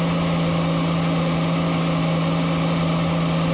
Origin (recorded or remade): recorded